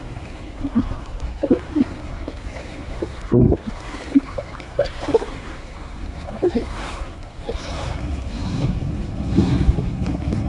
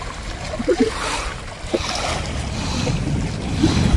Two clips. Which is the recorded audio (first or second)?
second